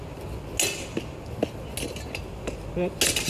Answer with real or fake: real